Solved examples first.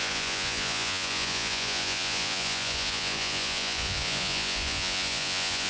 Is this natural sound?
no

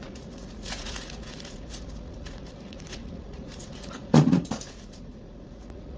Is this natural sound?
no